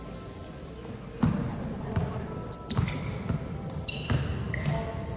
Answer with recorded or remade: recorded